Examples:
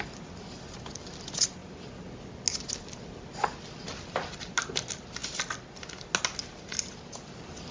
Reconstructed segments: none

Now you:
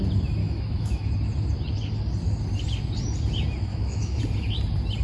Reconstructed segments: 0.4-1.1 (autoencoder, DAC-VAE); 3.7-4.2

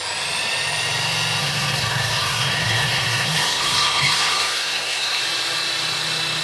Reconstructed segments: 1.4-5.2 (codec, SNAC)

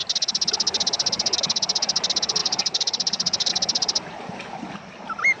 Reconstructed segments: 2.4-3.5 (vocoder, BigVGAN v2)

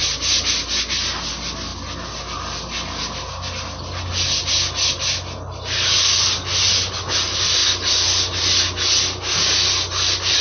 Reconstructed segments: none

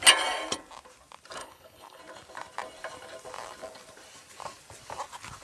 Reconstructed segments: 1.4-2.0 (codec, HILCodec)

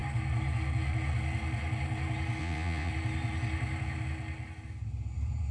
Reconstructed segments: 2.4-2.9 (vocoder, Vocos)

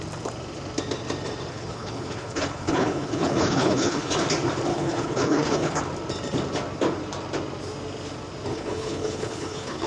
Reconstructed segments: 1.5-4.1 (codec, HILCodec); 4.7-5.8; 8.5-9.9